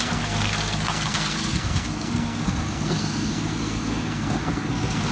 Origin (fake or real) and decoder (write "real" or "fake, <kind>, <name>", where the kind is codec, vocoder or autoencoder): fake, codec, SNAC